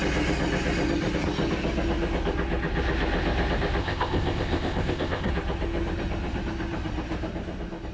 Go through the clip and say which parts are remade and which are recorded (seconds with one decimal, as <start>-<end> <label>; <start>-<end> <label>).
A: 0.0-3.8 recorded; 3.8-5.3 remade; 5.3-7.9 recorded

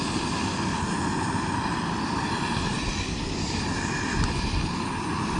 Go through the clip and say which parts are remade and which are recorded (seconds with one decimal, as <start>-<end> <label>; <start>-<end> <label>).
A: 0.0-2.7 recorded; 2.7-3.2 remade; 3.2-5.4 recorded

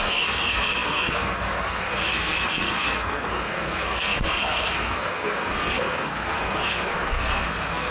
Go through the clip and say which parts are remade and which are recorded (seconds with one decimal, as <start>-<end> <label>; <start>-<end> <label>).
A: 0.0-7.9 remade

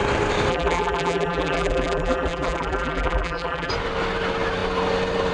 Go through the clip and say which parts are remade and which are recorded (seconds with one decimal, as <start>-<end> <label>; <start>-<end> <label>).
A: 0.0-0.5 recorded; 0.5-3.7 remade; 3.7-5.3 recorded

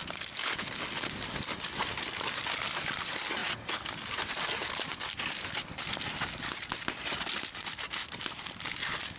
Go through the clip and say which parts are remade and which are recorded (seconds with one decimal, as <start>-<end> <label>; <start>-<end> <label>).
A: 0.0-0.4 recorded; 0.4-1.1 remade; 1.1-9.2 recorded

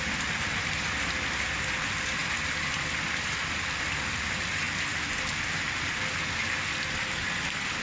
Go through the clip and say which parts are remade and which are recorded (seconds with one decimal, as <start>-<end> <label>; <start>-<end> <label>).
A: 0.0-7.8 recorded

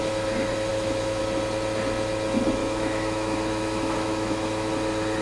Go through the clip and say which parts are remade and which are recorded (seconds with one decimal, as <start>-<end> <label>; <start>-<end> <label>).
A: 0.0-0.7 recorded; 0.7-1.2 remade; 1.2-2.6 recorded; 2.6-4.7 remade; 4.7-5.2 recorded